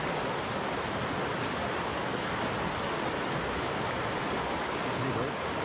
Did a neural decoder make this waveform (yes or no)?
no